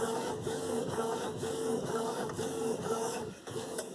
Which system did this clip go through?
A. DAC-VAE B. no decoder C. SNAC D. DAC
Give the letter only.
D